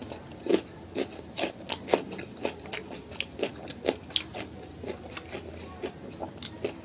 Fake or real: real